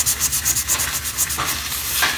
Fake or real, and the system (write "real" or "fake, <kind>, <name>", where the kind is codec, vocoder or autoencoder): fake, vocoder, BigVGAN v2